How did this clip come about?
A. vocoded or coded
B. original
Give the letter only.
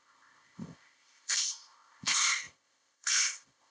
A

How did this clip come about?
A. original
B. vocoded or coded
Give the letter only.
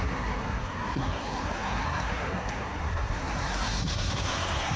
B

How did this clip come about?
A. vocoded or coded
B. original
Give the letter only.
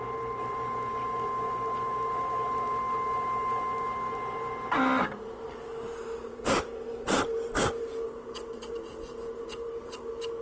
B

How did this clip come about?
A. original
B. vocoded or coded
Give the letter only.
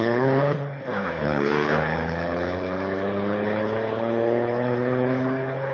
B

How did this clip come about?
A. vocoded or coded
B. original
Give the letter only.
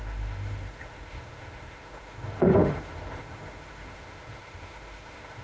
A